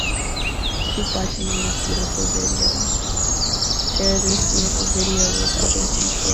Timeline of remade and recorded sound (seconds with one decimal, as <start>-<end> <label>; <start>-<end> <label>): 0.0-4.3 recorded; 4.3-4.8 remade; 4.8-5.6 recorded; 5.6-6.3 remade